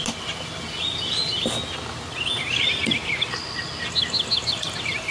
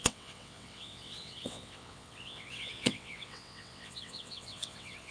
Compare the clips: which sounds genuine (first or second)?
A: first